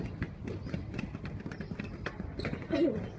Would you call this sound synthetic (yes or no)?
yes